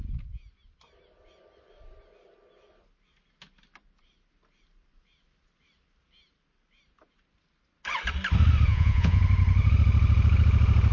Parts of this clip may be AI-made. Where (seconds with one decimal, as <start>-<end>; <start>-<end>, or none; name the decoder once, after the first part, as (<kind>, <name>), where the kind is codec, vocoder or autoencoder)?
8.7-9.2 (vocoder, Vocos)